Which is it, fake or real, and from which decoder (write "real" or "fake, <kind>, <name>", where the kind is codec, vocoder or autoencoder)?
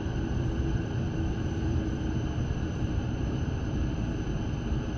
fake, vocoder, BigVGAN v2